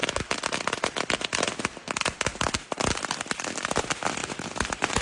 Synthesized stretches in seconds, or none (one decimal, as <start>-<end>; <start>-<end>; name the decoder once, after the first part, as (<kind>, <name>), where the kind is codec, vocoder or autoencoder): 4.2-5.0 (vocoder, BigVGAN v2)